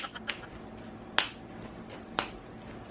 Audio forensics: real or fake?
real